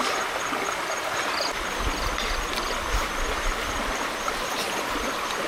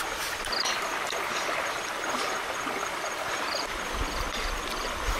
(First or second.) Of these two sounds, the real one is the first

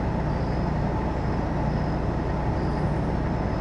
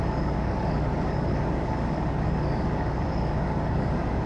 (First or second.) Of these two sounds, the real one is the first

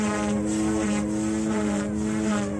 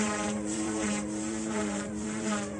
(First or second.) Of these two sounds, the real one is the first